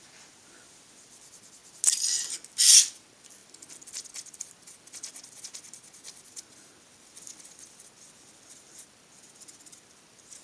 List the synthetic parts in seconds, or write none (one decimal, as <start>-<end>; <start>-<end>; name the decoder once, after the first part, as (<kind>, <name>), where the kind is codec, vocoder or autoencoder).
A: none

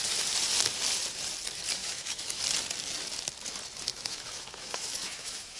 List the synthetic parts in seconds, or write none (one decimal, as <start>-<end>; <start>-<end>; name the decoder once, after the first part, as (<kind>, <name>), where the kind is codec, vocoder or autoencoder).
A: 1.8-2.4 (autoencoder, DAC-VAE); 3.9-5.6